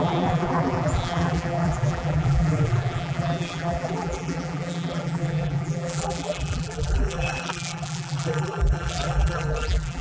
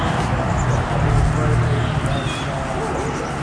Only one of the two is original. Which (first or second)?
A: second